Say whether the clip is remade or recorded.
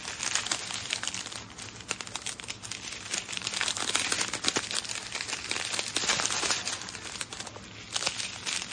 recorded